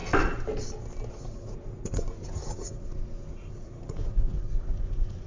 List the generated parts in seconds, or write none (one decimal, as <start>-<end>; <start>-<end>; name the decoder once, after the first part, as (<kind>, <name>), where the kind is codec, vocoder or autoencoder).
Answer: 1.1-5.3 (vocoder, Vocos)